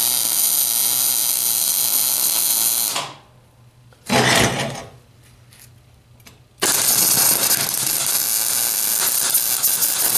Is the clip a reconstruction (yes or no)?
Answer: no